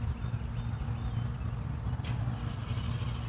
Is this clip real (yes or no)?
yes